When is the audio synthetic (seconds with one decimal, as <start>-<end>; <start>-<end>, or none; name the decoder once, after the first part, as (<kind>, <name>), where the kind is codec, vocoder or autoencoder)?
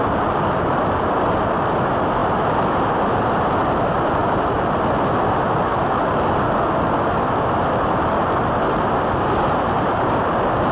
none